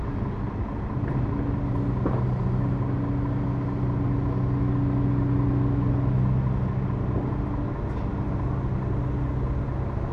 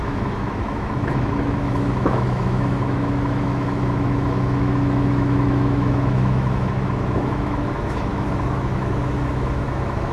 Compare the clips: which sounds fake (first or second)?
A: second